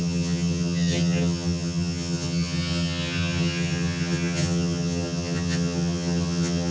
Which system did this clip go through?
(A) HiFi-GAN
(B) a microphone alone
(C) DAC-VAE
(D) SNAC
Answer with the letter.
A